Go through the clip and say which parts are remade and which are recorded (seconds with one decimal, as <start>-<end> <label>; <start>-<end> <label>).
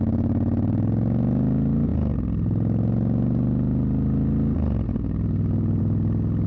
0.0-6.5 recorded